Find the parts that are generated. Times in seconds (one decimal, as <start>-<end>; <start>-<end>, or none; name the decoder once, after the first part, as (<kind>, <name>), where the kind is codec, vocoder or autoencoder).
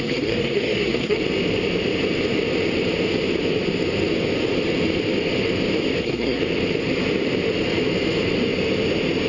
0.0-1.2 (codec, SNAC); 6.0-6.4